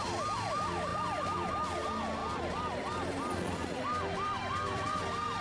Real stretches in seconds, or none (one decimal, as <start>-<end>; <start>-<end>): 0.0-0.9; 1.5-2.2; 5.0-5.4